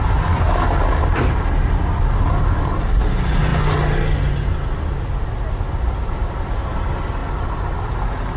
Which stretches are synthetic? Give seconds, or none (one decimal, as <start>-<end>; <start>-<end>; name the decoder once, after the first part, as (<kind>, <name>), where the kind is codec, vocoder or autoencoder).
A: none